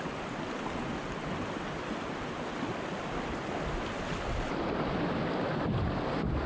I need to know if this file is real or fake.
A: real